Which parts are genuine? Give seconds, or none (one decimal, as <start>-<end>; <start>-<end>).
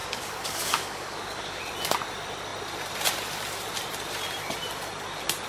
1.6-5.5